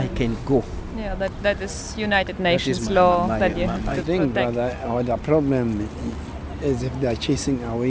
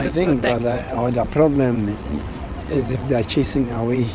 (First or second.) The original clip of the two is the first